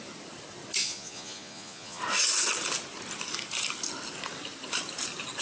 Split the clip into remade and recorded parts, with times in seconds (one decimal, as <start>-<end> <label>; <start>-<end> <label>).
0.0-0.8 recorded; 0.8-2.0 remade; 2.0-5.4 recorded